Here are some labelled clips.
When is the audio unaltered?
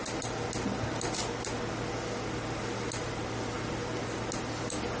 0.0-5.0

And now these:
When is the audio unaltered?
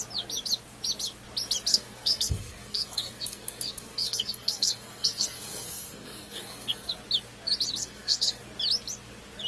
0.0-1.7; 6.9-7.8; 8.4-9.5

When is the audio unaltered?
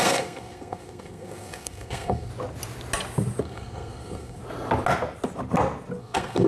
2.3-3.4; 4.4-6.0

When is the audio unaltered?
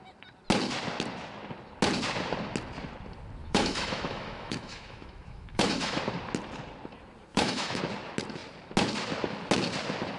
0.0-3.4; 6.0-7.3; 7.8-10.2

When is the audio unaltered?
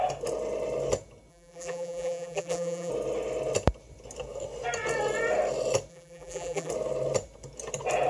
0.0-1.3; 2.9-5.9; 6.7-8.1